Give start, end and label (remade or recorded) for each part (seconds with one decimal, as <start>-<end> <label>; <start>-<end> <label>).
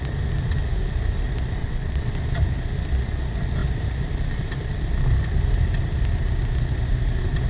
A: 0.0-1.6 recorded; 1.6-2.1 remade; 2.1-7.5 recorded